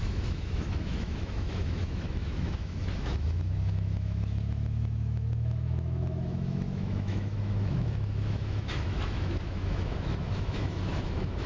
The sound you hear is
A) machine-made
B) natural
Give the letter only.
A